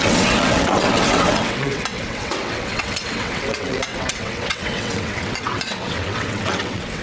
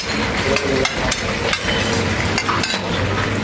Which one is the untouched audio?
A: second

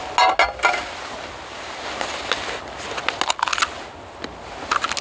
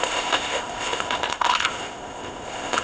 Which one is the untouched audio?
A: first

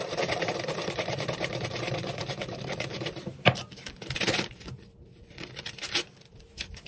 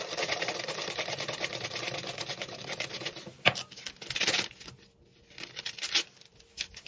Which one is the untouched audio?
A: second